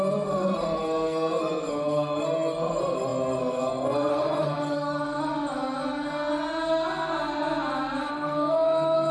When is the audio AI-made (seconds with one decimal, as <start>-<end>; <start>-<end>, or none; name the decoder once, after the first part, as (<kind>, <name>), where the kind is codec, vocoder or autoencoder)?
0.0-5.3 (codec, SNAC); 8.1-9.1